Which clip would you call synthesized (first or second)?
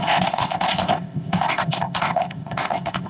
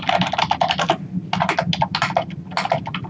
first